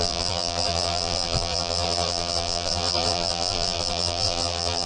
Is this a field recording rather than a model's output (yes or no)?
no